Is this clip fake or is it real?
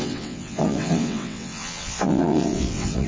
fake